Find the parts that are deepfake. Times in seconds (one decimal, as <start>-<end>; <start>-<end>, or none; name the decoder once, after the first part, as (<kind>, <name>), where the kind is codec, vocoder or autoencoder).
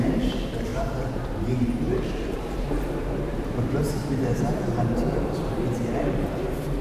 0.0-6.8 (vocoder, BigVGAN v2)